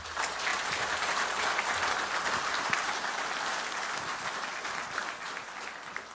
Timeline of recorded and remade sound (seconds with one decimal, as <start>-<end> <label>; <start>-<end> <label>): 0.0-6.1 recorded